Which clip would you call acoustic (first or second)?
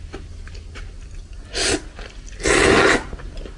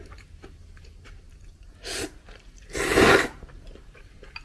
first